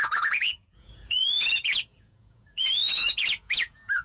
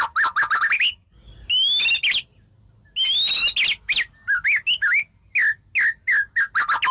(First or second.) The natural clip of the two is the second